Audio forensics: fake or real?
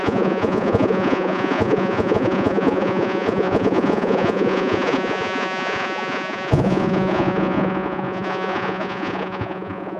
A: fake